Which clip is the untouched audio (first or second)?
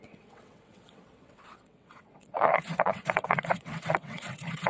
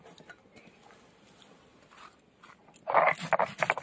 second